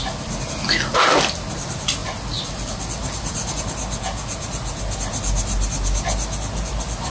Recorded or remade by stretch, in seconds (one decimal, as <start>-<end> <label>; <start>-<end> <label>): 0.0-7.1 recorded